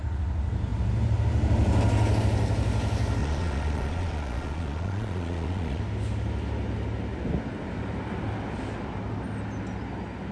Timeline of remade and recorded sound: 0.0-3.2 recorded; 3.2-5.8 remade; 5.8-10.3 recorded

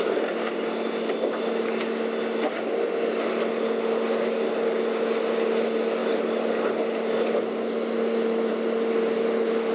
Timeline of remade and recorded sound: 0.0-9.7 recorded

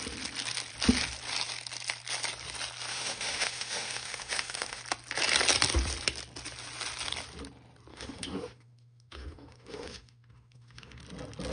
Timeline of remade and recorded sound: 0.0-2.9 recorded; 2.9-4.8 remade; 4.8-7.9 recorded; 7.9-11.0 remade; 11.0-11.5 recorded